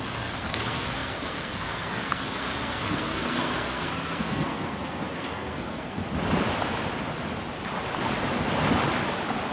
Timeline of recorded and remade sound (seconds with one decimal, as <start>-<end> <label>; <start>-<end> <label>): 0.0-6.0 remade; 6.0-9.5 recorded